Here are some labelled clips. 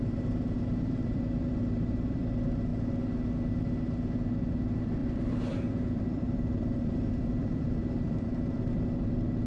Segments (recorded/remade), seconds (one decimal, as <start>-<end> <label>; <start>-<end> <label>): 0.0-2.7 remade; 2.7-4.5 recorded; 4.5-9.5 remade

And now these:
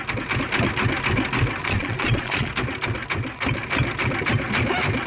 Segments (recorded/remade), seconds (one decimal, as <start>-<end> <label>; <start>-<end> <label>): 0.0-1.6 recorded; 1.6-2.5 remade; 2.5-5.1 recorded

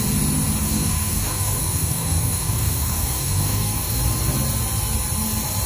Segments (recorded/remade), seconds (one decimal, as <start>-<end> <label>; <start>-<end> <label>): 0.0-0.6 recorded; 0.6-4.0 remade; 4.0-5.7 recorded

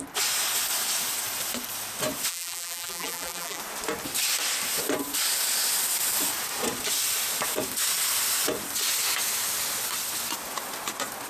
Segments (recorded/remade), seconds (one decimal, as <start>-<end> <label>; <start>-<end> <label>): 0.0-2.3 recorded; 2.3-3.6 remade; 3.6-11.3 recorded

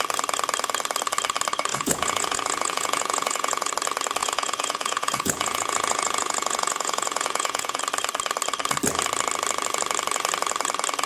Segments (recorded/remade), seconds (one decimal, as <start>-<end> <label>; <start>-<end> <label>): 0.0-1.7 recorded; 1.7-3.7 remade; 3.7-4.2 recorded; 4.2-7.8 remade; 7.8-11.1 recorded

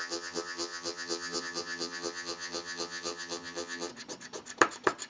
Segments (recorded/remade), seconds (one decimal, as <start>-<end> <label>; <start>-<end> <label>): 0.0-3.9 remade; 3.9-5.1 recorded

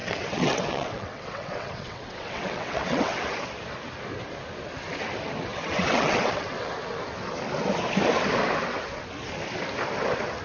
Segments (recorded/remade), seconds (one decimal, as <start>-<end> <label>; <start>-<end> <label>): 0.0-3.2 remade; 3.2-5.5 recorded; 5.5-6.7 remade; 6.7-10.4 recorded